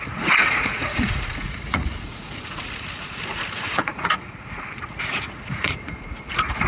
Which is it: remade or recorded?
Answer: remade